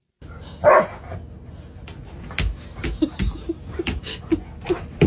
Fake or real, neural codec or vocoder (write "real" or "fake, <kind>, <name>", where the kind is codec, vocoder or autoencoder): real